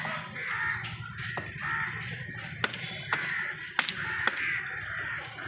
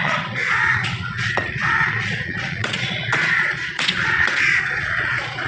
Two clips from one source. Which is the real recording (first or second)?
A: first